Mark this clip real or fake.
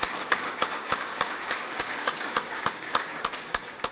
fake